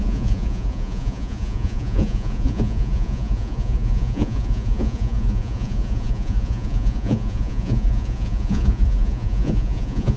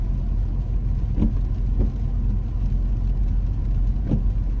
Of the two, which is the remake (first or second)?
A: first